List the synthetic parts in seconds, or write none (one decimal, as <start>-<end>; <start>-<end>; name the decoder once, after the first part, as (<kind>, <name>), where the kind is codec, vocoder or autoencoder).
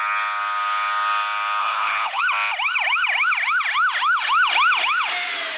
1.6-2.2 (codec, HILCodec)